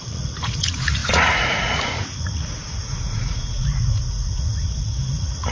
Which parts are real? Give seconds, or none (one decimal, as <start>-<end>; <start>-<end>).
none